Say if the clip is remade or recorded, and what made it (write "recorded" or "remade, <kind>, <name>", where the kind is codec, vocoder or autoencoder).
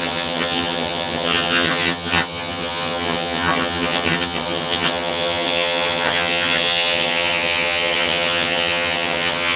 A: remade, vocoder, HiFi-GAN